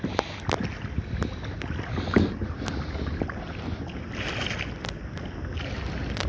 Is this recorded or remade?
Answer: recorded